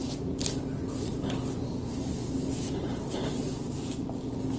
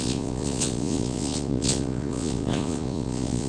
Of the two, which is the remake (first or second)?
second